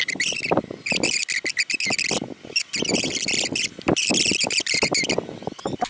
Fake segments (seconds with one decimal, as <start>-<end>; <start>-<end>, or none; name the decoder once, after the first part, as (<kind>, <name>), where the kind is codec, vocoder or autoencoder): none